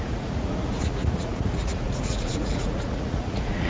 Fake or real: fake